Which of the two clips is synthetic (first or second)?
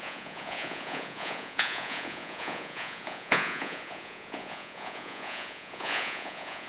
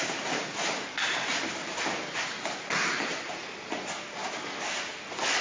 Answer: first